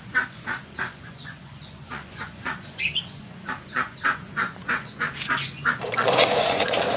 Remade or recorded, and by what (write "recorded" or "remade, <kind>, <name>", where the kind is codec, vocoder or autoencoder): remade, vocoder, Vocos